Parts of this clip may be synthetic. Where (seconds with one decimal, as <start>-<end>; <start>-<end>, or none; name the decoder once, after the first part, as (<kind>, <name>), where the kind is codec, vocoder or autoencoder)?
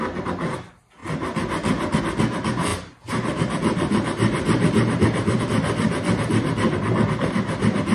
2.7-5.4 (vocoder, BigVGAN v2)